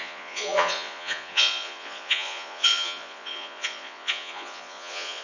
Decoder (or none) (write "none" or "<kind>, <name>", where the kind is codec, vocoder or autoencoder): vocoder, Vocos